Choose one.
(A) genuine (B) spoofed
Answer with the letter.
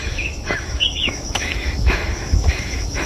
B